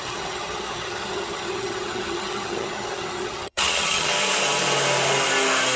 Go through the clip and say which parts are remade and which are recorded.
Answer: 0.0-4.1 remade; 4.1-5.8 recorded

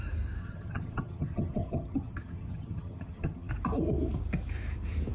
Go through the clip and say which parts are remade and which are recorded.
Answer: 0.0-0.4 recorded; 0.4-3.5 remade; 3.5-5.1 recorded

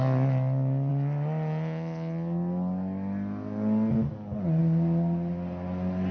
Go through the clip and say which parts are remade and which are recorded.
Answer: 0.0-6.1 recorded

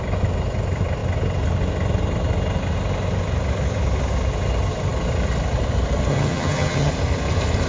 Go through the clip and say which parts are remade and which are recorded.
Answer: 0.0-6.1 recorded; 6.1-6.9 remade; 6.9-7.7 recorded

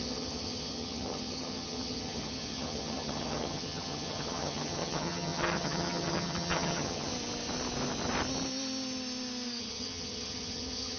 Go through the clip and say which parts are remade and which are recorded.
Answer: 0.0-7.1 remade; 7.1-9.6 recorded; 9.6-11.0 remade

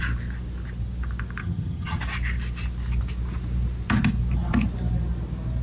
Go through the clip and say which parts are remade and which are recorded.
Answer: 0.0-1.4 recorded; 1.4-2.0 remade; 2.0-5.6 recorded

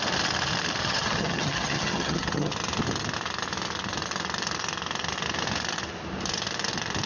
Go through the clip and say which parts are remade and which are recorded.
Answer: 0.0-0.8 recorded; 0.8-2.5 remade; 2.5-7.1 recorded